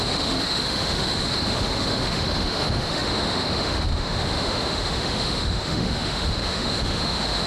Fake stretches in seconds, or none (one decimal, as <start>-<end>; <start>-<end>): 0.0-7.5

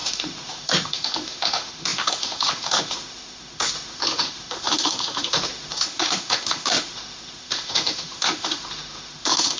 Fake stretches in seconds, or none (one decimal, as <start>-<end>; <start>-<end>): 0.0-9.6

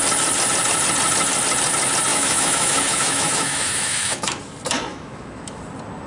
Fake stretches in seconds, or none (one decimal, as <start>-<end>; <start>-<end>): 2.1-4.4; 4.9-5.6

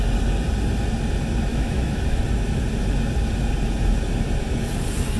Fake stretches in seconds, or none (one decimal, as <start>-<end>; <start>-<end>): 1.5-2.2